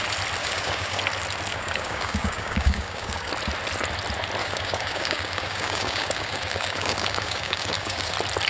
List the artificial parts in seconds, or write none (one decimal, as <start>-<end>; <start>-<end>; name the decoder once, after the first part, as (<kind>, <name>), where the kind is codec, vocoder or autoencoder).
0.4-1.0 (codec, DAC); 1.5-3.3; 4.4-8.1